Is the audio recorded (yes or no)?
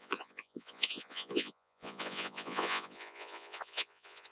no